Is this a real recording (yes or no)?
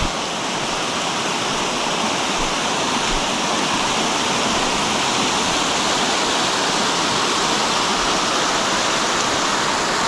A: yes